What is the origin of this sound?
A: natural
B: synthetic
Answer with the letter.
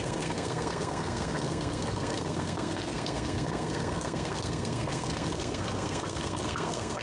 B